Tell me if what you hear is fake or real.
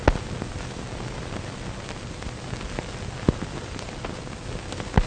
real